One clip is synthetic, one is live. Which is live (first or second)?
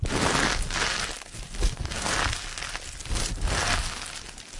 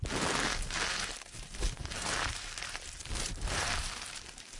first